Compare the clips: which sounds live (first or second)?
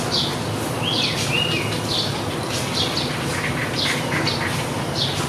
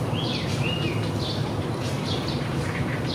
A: first